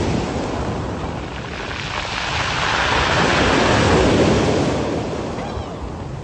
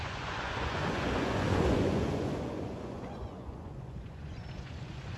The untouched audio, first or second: first